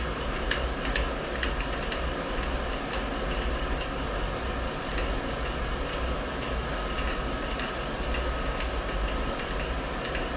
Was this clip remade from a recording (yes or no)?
no